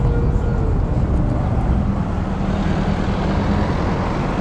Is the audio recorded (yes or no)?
yes